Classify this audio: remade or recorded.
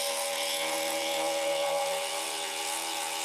remade